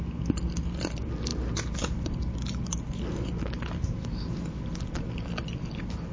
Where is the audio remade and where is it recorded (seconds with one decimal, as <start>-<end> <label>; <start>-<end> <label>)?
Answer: 0.0-6.1 recorded